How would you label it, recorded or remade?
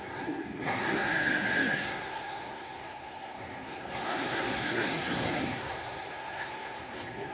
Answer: remade